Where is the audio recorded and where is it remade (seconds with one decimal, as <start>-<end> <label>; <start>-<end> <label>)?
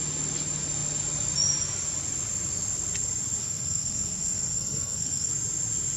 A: 0.0-3.4 recorded; 3.4-5.3 remade; 5.3-6.0 recorded